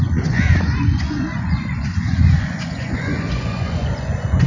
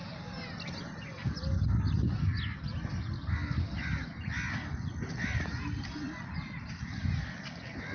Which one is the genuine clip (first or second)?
second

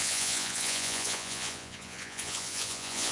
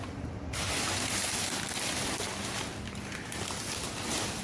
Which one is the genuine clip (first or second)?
second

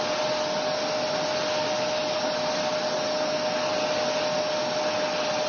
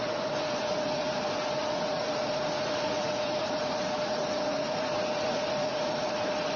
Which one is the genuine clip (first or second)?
first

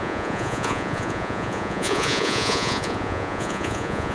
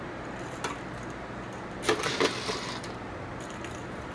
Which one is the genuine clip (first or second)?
second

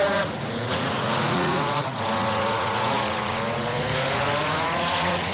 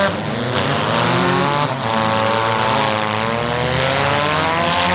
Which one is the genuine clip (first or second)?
second